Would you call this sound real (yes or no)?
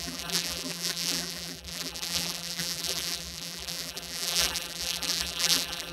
no